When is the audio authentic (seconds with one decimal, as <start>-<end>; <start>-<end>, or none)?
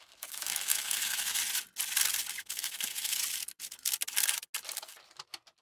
1.4-2.4; 3.2-5.6